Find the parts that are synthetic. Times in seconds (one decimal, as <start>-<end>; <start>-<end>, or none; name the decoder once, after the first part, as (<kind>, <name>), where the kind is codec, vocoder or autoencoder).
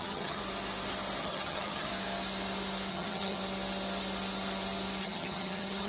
0.0-0.4 (vocoder, HiFi-GAN); 1.2-1.9; 2.9-3.4; 5.0-5.9